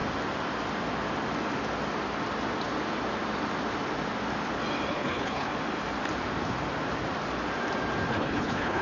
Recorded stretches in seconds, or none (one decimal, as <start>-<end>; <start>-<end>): 0.0-4.9; 5.5-8.1